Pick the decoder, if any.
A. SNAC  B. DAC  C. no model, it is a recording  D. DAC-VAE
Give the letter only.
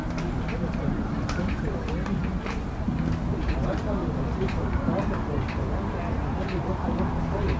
C